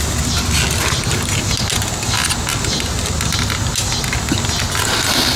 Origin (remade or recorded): recorded